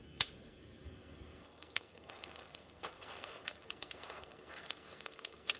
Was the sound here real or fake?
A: fake